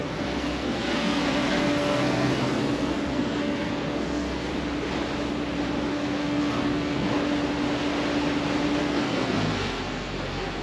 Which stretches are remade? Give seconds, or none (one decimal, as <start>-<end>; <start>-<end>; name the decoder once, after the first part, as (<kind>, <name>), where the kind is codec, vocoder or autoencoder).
0.0-4.5 (codec, SNAC); 5.9-7.1; 8.8-10.6